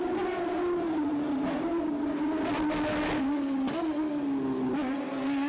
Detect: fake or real real